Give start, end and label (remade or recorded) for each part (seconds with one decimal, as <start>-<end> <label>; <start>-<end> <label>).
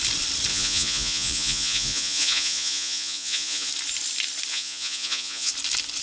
0.0-0.5 recorded; 0.5-3.7 remade; 3.7-4.5 recorded; 4.5-5.5 remade; 5.5-6.0 recorded